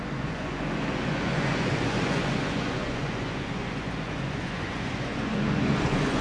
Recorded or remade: remade